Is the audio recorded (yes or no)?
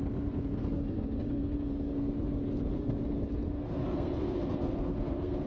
no